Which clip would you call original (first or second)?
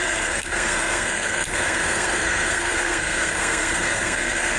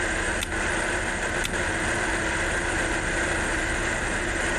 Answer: second